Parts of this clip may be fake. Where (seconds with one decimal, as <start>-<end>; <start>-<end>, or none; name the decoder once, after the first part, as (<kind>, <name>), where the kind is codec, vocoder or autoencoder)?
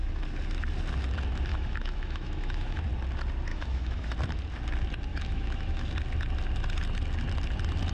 1.5-2.8 (autoencoder, DAC-VAE); 3.5-4.1; 5.1-5.9